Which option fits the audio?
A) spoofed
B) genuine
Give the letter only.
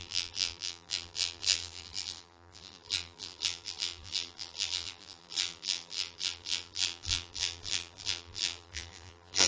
A